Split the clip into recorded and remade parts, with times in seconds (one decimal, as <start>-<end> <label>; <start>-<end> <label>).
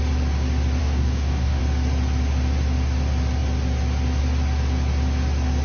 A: 0.0-0.8 recorded; 0.8-1.6 remade; 1.6-5.6 recorded